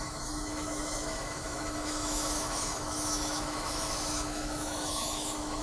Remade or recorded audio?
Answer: remade